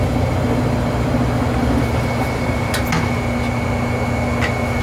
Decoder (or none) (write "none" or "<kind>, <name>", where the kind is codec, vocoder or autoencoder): none